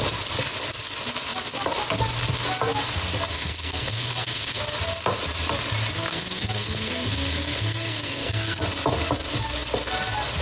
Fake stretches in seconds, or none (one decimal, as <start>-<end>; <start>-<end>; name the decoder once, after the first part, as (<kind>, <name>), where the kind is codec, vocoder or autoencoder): 3.3-4.6 (codec, SNAC); 6.1-8.6